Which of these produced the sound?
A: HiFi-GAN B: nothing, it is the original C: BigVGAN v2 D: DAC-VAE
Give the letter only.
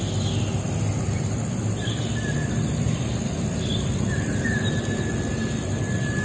B